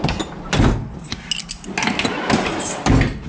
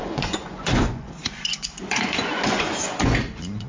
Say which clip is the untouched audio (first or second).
first